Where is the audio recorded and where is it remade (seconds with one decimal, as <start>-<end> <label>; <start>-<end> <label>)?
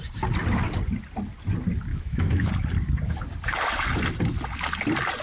0.0-1.9 recorded; 1.9-2.5 remade; 2.5-5.2 recorded